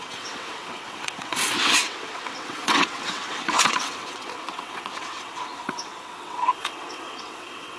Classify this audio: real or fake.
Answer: fake